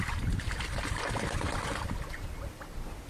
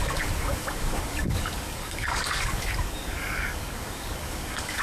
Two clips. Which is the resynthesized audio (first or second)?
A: second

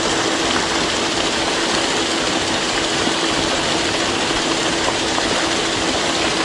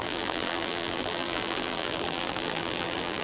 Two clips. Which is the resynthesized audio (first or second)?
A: second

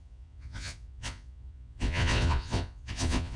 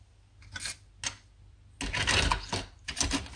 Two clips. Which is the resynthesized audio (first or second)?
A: first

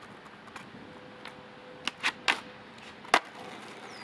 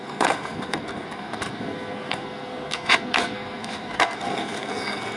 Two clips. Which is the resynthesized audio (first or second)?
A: second